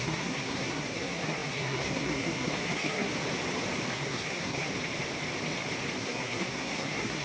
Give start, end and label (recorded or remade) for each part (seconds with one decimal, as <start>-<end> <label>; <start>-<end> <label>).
0.0-3.1 remade; 3.1-3.9 recorded; 3.9-4.7 remade; 4.7-6.0 recorded; 6.0-7.2 remade